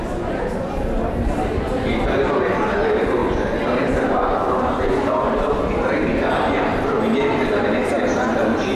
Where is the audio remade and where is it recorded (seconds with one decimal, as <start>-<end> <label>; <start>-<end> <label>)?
0.0-8.7 recorded